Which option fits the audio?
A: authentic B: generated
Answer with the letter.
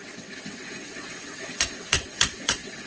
B